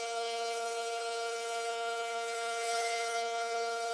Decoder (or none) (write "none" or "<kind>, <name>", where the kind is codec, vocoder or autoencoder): codec, HILCodec